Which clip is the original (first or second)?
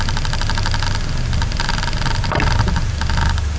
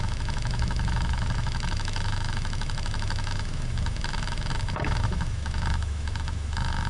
first